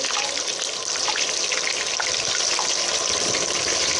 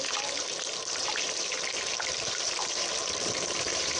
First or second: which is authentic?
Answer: first